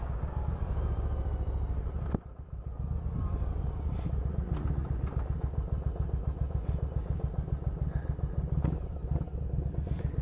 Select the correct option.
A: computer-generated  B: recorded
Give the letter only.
B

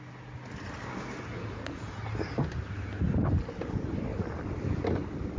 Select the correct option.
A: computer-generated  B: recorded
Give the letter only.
B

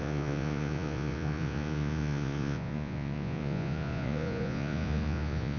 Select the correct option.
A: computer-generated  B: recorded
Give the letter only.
A